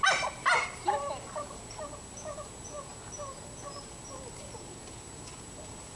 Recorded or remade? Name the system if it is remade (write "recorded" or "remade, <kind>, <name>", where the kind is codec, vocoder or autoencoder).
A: remade, vocoder, BigVGAN v2